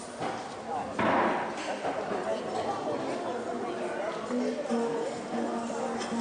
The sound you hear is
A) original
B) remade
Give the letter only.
A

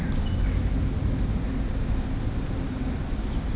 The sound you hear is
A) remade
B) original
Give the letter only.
B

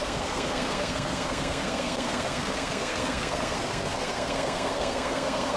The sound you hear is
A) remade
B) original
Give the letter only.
A